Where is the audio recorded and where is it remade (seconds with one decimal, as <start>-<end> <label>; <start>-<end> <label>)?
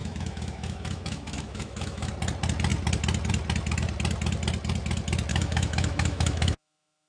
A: 0.0-2.1 remade; 2.1-5.3 recorded; 5.3-7.1 remade